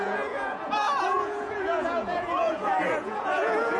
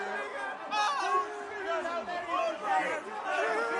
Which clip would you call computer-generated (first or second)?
first